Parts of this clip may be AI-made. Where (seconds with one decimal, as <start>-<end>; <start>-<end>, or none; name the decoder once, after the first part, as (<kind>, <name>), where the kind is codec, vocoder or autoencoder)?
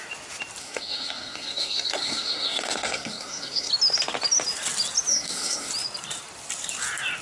0.6-3.7 (codec, SNAC); 5.1-5.7